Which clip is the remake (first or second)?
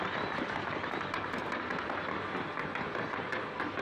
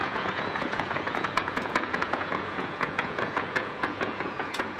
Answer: second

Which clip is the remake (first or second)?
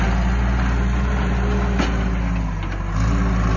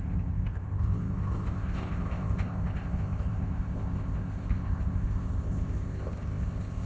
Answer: second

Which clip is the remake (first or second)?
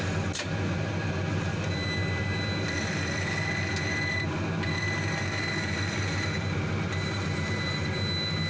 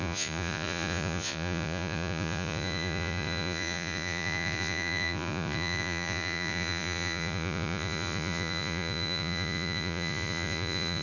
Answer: second